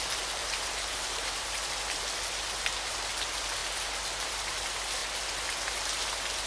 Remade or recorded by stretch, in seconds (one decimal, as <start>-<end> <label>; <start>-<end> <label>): 0.0-0.4 recorded; 0.4-1.6 remade; 1.6-6.5 recorded